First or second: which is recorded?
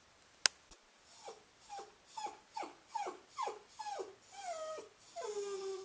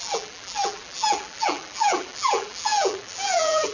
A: first